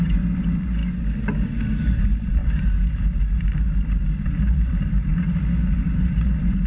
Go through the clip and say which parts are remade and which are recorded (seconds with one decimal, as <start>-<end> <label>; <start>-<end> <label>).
0.0-0.8 remade; 0.8-1.8 recorded; 1.8-2.4 remade; 2.4-4.4 recorded; 4.4-5.1 remade; 5.1-5.9 recorded; 5.9-6.7 remade